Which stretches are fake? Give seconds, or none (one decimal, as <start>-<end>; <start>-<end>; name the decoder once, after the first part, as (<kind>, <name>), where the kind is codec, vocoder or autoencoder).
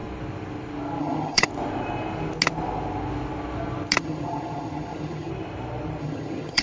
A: 1.0-1.5 (vocoder, HiFi-GAN); 4.0-5.3; 6.0-6.6